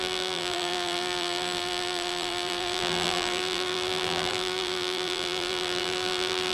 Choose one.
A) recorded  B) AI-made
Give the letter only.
B